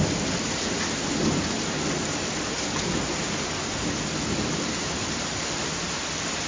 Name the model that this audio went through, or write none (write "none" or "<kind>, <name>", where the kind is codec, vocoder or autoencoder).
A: none